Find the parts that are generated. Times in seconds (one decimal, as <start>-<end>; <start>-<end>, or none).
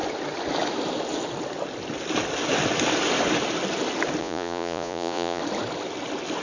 4.2-5.4